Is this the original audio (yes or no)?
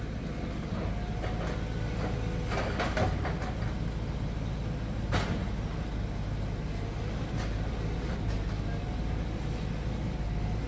yes